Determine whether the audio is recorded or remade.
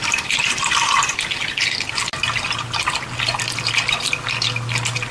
recorded